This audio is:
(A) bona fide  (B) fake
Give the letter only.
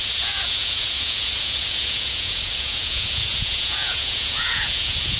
B